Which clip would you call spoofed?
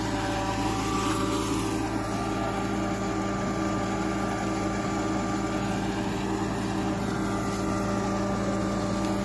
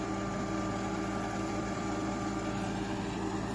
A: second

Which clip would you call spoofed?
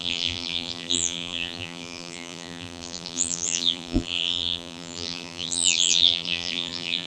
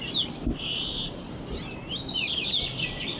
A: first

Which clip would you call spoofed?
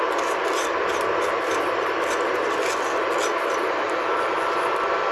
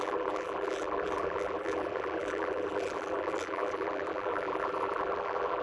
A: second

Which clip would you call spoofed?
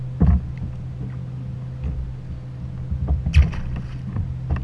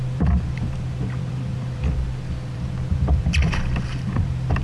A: second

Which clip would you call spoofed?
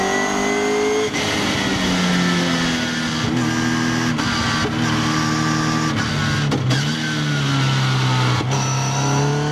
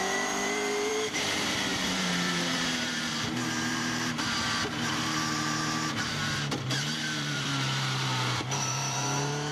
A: second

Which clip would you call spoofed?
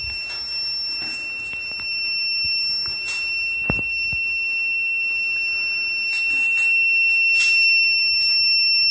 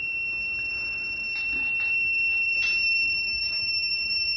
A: second